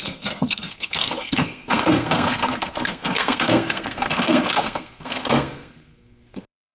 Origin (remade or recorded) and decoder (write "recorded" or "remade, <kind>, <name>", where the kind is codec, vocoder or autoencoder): remade, codec, SNAC